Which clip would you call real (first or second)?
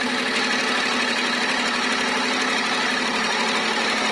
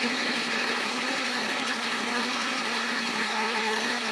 first